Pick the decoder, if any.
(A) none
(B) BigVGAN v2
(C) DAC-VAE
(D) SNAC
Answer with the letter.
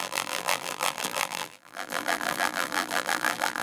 B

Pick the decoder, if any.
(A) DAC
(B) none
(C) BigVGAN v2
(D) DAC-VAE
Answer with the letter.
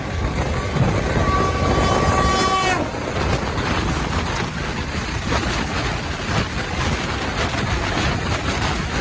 B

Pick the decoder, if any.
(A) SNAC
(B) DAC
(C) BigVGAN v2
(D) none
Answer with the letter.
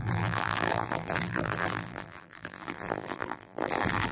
C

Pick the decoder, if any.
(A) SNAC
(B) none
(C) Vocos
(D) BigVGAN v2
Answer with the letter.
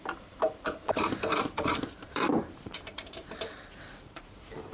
D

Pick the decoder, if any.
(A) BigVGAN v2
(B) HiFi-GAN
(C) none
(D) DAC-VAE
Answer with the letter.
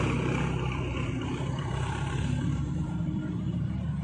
A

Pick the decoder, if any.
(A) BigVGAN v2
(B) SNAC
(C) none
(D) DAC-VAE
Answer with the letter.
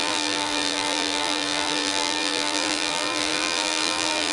A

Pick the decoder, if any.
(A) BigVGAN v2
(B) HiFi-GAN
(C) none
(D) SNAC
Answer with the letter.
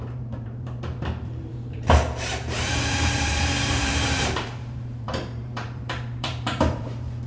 A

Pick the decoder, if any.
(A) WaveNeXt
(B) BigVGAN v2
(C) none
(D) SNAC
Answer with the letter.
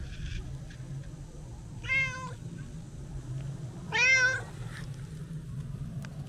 C